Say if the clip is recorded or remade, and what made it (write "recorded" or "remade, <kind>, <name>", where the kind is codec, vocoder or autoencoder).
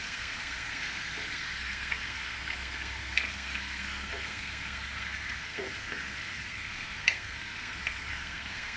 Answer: remade, codec, SNAC